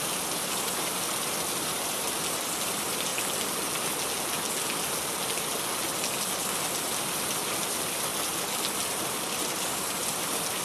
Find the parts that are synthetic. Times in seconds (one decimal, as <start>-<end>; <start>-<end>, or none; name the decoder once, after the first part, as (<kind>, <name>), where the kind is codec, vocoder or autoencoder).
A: 0.0-3.1 (vocoder, BigVGAN v2); 6.4-10.6